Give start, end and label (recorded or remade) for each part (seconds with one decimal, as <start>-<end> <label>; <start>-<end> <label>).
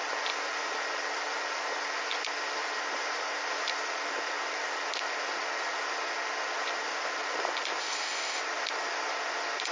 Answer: 0.0-7.8 recorded; 7.8-8.4 remade; 8.4-9.7 recorded